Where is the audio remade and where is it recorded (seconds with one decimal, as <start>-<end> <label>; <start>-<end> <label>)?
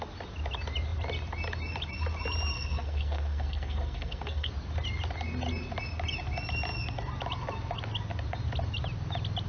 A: 0.0-2.5 recorded; 2.5-4.5 remade; 4.5-9.5 recorded